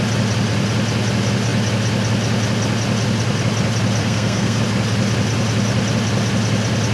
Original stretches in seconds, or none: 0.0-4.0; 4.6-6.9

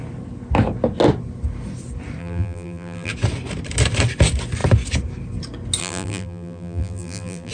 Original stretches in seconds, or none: 0.0-2.2; 3.1-5.8

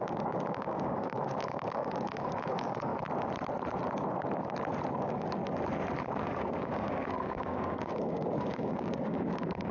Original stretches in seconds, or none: 2.9-4.9; 5.4-6.0

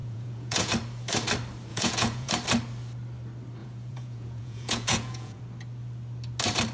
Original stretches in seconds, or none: 0.7-1.7; 2.3-3.6; 5.4-6.7

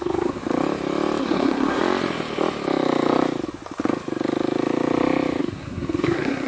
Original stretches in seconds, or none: 0.4-1.2; 1.8-5.4

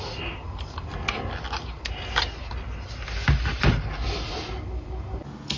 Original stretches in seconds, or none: 0.0-5.6

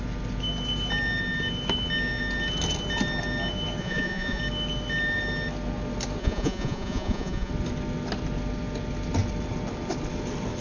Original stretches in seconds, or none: 0.0-3.8; 4.4-6.2; 7.5-10.6

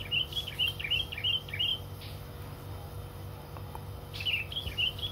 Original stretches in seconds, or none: 0.0-5.1